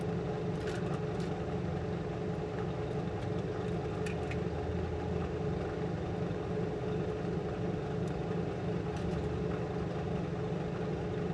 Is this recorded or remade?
recorded